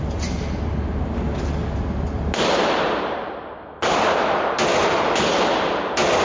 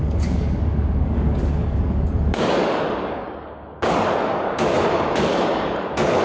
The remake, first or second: second